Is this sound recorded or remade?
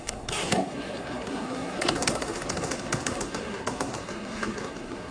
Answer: remade